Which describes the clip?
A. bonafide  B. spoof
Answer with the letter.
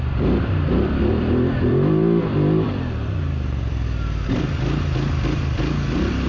B